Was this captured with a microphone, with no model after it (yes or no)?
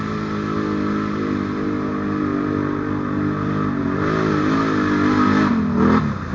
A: yes